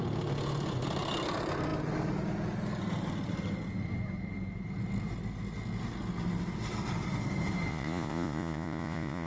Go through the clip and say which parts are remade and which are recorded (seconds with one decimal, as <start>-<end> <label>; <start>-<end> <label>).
0.0-7.7 recorded; 7.7-9.3 remade